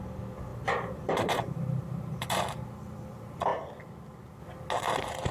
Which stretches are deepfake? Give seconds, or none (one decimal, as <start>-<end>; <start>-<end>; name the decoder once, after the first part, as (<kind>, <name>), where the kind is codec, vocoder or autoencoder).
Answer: 0.5-2.4 (vocoder, BigVGAN v2)